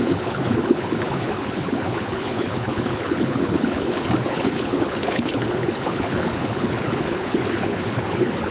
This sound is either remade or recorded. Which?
remade